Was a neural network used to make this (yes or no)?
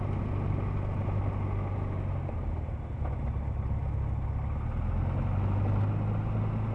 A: no